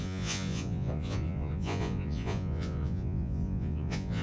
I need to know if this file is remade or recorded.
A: remade